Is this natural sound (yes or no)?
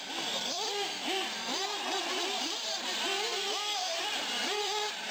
no